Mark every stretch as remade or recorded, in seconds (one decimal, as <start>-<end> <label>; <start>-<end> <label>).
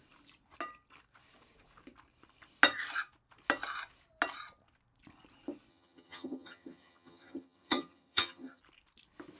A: 0.0-5.7 recorded; 5.7-8.6 remade; 8.6-9.4 recorded